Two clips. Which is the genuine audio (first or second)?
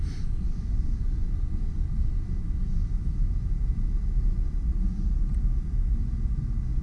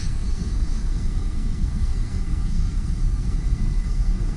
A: first